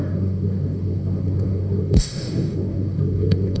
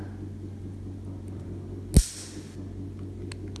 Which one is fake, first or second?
first